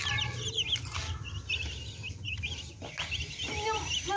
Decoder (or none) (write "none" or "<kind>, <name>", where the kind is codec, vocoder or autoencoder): none